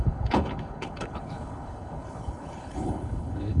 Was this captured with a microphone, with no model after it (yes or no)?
no